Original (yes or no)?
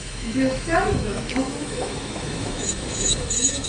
no